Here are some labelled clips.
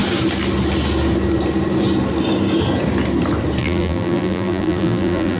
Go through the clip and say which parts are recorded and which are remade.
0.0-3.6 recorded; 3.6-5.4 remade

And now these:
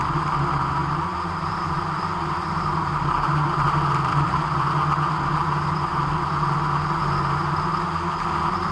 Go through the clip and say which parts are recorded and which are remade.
0.0-0.8 recorded; 0.8-4.7 remade; 4.7-8.7 recorded

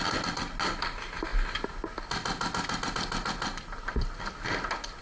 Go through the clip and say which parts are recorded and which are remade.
0.0-5.0 recorded

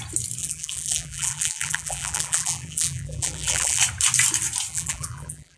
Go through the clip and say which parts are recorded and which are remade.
0.0-0.4 recorded; 0.4-3.8 remade; 3.8-4.7 recorded; 4.7-5.6 remade

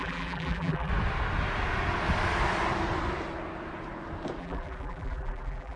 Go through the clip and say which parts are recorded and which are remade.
0.0-0.9 remade; 0.9-4.4 recorded; 4.4-5.8 remade

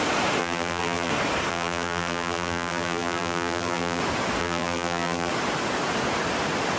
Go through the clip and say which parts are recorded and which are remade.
0.0-0.4 recorded; 0.4-1.1 remade; 1.1-1.5 recorded; 1.5-4.0 remade; 4.0-4.4 recorded; 4.4-5.3 remade; 5.3-6.8 recorded